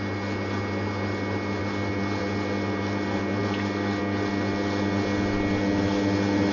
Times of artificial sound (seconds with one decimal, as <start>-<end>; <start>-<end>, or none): none